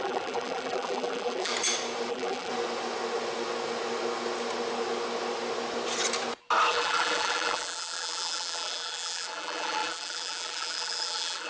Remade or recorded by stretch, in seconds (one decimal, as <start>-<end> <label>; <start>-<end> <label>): 0.0-1.5 remade; 1.5-2.1 recorded; 2.1-2.5 remade; 2.5-6.7 recorded; 6.7-11.5 remade

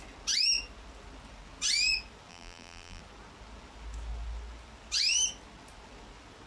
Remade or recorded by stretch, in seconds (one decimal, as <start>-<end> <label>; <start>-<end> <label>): 0.0-2.3 recorded; 2.3-3.0 remade; 3.0-6.5 recorded

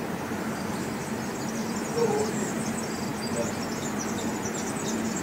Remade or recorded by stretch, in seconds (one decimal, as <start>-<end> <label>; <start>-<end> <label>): 0.0-5.2 recorded